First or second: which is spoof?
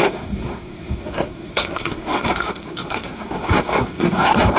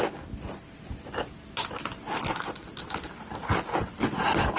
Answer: first